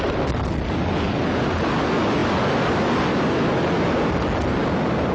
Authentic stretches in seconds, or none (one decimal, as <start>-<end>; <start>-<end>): 0.0-5.1